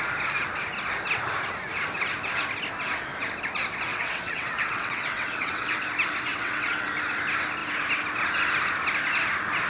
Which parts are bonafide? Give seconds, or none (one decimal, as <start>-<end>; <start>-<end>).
0.0-3.9; 5.8-6.3; 6.9-9.7

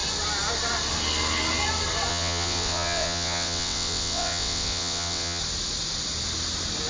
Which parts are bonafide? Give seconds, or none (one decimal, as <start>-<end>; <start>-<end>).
0.0-2.1; 5.4-6.9

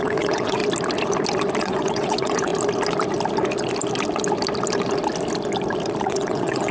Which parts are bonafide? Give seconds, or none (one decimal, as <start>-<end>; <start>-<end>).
0.6-1.6; 2.5-6.0

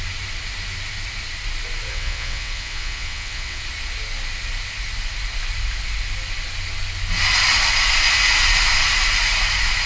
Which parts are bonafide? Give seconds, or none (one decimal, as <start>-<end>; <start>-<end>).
0.0-1.9; 3.6-9.9

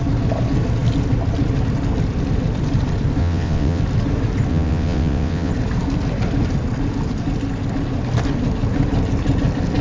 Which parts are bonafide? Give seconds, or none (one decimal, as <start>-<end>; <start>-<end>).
0.0-3.2; 3.8-4.5; 5.5-9.8

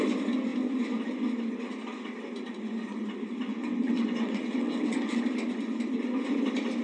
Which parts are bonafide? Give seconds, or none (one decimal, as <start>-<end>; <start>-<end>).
0.0-3.5; 5.2-6.8

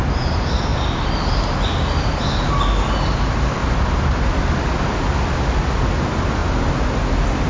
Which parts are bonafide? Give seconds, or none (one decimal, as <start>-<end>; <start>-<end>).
0.0-7.5

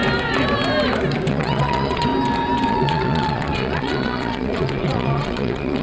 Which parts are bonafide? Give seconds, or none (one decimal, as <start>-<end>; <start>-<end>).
0.0-1.3; 2.1-2.7